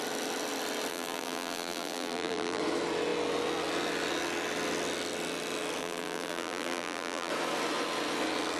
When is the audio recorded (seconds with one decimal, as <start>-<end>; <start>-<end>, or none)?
0.0-0.9; 2.6-5.8; 7.3-8.6